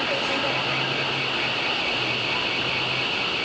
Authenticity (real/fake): real